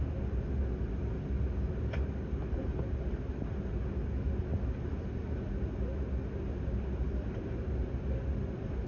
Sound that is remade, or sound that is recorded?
recorded